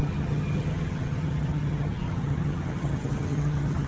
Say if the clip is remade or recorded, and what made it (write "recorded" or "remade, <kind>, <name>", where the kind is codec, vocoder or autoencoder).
remade, vocoder, HiFi-GAN